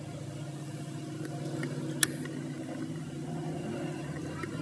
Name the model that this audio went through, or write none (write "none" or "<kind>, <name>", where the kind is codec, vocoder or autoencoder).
none